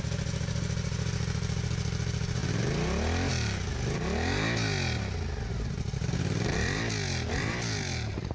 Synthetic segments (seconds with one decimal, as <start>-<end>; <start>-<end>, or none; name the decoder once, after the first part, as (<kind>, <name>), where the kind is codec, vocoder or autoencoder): none